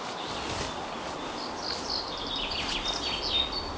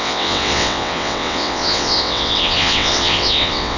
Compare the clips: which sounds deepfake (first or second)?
second